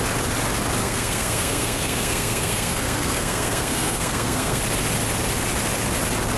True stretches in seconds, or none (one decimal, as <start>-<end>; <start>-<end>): 0.0-0.8; 4.6-6.4